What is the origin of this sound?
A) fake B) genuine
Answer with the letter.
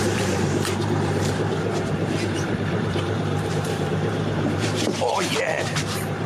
A